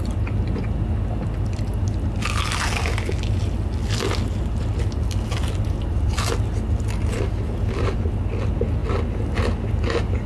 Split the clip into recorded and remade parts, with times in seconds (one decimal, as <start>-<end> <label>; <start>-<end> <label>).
0.0-10.3 recorded